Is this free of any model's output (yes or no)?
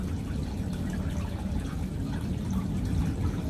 yes